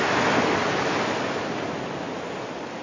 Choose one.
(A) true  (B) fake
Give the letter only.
A